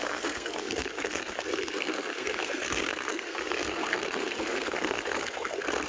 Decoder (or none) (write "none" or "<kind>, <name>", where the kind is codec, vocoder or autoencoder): codec, SNAC